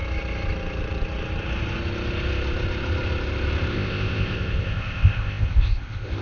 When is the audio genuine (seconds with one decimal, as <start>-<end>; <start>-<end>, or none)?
0.0-3.7